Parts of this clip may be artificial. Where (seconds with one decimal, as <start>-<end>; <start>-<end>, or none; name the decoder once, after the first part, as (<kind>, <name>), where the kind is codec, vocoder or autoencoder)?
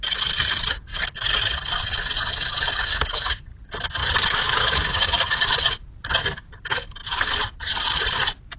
4.0-5.2 (codec, DAC)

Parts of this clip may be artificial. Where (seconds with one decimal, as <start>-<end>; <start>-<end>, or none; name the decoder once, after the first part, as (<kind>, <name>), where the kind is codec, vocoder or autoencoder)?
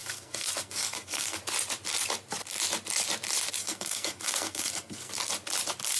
0.0-1.4 (codec, SNAC); 3.6-5.1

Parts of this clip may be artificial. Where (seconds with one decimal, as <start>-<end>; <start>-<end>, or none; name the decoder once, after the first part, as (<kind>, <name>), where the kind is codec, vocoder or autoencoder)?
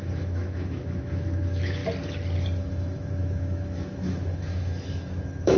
0.0-1.8 (autoencoder, DAC-VAE); 2.6-5.6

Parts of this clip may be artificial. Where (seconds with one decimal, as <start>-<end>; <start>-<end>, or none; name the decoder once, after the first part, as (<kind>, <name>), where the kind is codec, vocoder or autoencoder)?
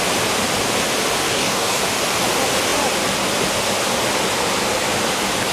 1.3-1.8 (codec, DAC)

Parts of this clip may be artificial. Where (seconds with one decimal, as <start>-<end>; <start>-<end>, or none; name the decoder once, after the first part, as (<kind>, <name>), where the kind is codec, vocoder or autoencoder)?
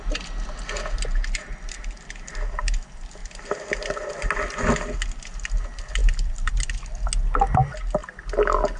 none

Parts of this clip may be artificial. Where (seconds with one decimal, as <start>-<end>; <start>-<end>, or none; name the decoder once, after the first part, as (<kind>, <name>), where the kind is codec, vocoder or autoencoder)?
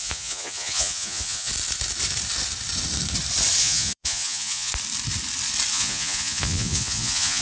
0.0-1.5 (vocoder, Vocos); 3.6-4.7; 5.7-7.4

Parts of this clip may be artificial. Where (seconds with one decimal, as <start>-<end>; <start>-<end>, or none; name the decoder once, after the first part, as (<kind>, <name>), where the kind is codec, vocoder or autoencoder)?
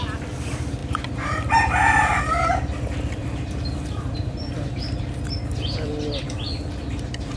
3.2-5.9 (vocoder, BigVGAN v2)